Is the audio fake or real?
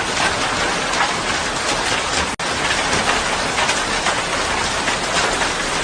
real